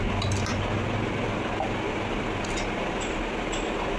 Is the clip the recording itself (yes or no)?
yes